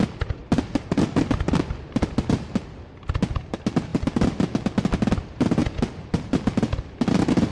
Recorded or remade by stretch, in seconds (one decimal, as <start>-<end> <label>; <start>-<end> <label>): 0.0-7.5 recorded